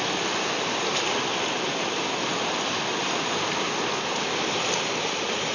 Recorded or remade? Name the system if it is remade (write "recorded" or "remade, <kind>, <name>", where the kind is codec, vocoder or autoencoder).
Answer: recorded